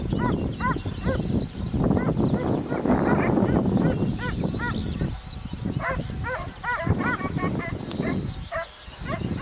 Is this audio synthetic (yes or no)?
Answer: no